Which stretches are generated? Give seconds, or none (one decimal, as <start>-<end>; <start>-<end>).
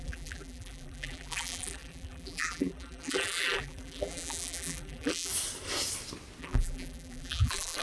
0.0-5.3; 6.4-7.8